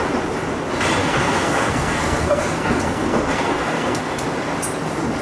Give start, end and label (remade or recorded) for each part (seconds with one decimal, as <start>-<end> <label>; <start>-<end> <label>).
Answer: 0.0-1.0 recorded; 1.0-4.1 remade; 4.1-5.2 recorded